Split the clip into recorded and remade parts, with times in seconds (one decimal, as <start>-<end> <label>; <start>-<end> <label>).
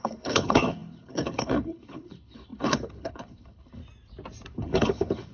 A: 0.0-3.8 remade; 3.8-4.5 recorded; 4.5-5.3 remade